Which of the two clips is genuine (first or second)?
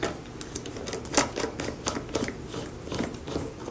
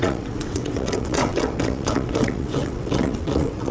first